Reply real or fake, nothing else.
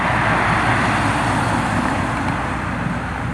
real